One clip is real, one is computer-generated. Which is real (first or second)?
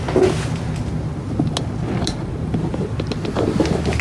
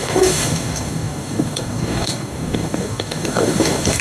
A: first